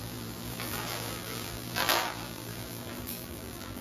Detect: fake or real fake